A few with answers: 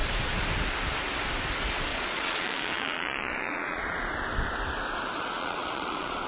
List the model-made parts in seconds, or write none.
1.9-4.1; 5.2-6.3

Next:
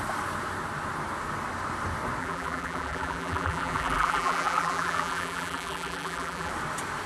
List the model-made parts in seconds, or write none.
2.2-6.5

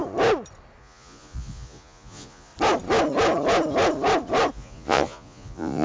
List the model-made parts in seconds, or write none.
0.8-2.5; 4.5-5.8

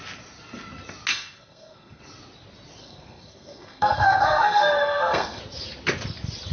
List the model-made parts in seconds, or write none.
1.1-2.0; 2.8-5.4